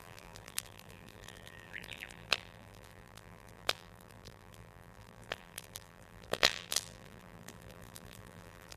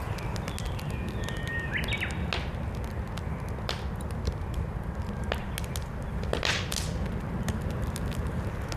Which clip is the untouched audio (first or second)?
second